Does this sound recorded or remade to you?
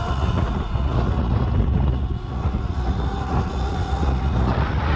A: remade